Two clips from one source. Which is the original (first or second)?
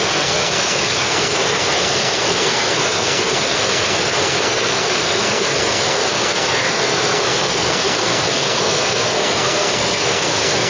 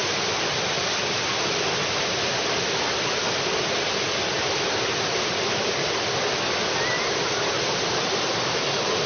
second